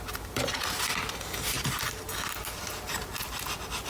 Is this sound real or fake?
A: real